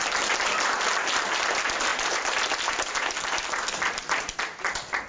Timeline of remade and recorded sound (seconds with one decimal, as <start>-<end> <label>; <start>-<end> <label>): 0.0-5.1 recorded